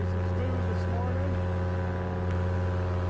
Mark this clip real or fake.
real